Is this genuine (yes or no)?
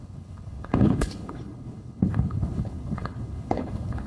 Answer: no